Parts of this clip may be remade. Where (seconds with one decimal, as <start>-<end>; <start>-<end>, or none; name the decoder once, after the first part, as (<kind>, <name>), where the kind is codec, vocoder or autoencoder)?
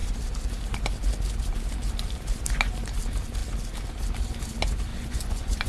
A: 4.9-5.7 (vocoder, Vocos)